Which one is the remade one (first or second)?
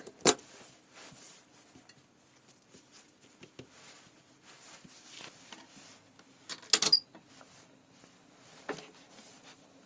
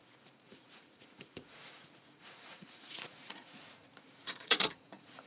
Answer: second